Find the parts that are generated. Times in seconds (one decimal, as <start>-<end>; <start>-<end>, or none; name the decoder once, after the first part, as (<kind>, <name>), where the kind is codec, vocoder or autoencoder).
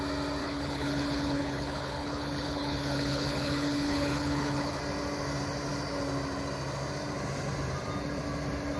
0.4-4.8 (codec, HILCodec)